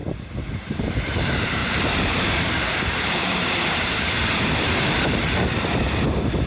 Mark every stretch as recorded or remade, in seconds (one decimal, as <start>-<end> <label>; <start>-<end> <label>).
0.0-0.9 remade; 0.9-1.6 recorded; 1.6-5.3 remade; 5.3-6.5 recorded